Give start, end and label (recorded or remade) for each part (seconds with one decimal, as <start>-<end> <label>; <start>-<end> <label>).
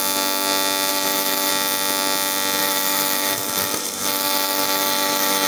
0.0-0.9 recorded; 0.9-1.5 remade; 1.5-2.6 recorded; 2.6-5.5 remade